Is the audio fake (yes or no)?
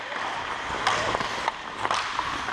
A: no